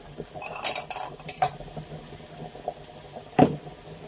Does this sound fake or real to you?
real